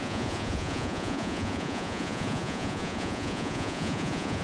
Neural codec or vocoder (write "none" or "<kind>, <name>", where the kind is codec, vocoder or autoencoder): vocoder, Vocos